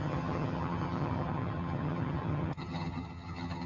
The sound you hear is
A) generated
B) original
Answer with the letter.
A